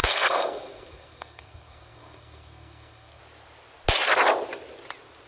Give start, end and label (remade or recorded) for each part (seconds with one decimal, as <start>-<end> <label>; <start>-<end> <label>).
0.0-3.2 remade; 3.2-5.3 recorded